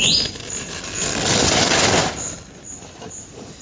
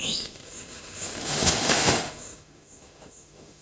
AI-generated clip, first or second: second